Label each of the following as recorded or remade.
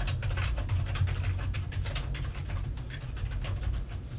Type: remade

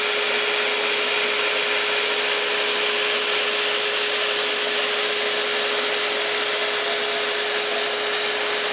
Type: recorded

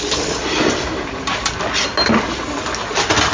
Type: recorded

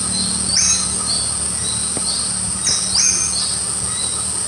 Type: recorded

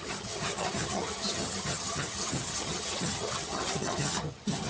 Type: remade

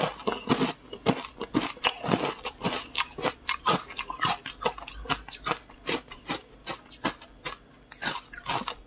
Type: recorded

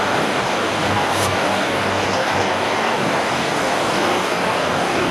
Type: remade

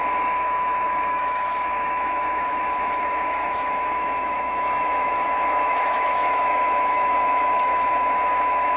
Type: remade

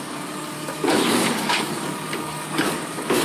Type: remade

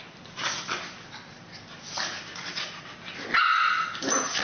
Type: recorded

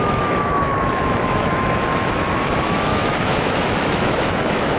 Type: remade